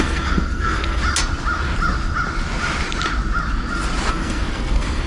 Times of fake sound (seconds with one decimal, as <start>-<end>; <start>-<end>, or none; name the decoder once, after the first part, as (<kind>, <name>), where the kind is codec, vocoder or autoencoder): 0.0-1.0 (codec, SNAC); 4.1-5.1